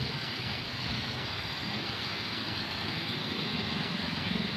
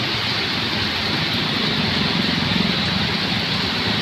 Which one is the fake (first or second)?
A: first